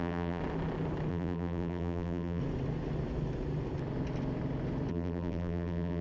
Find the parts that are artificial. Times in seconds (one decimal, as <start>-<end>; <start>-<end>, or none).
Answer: 0.0-0.4; 1.1-2.4; 4.9-6.0